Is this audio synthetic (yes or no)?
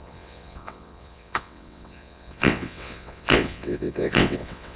yes